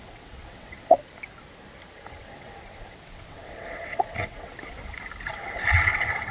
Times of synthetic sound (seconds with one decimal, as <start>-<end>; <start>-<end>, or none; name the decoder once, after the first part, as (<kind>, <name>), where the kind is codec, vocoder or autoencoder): 0.0-1.0 (vocoder, WaveNeXt); 2.1-4.5; 5.3-6.3